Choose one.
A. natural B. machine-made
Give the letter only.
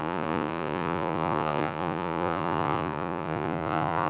B